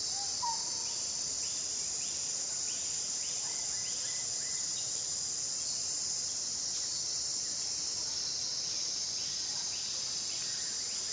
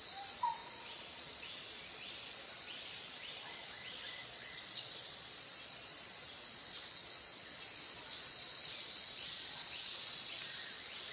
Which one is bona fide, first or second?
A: first